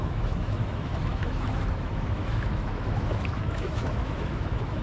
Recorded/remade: remade